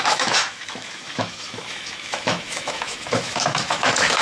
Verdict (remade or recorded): remade